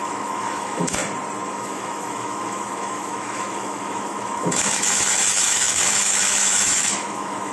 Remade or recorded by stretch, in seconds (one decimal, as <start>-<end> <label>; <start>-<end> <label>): 0.0-1.0 remade; 1.0-1.5 recorded; 1.5-7.5 remade